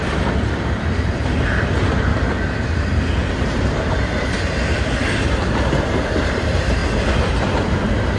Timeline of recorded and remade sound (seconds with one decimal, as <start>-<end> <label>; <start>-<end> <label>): 0.0-2.1 remade; 2.1-3.3 recorded; 3.3-6.8 remade; 6.8-7.3 recorded; 7.3-8.2 remade